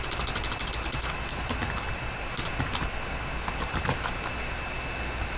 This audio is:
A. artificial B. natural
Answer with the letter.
B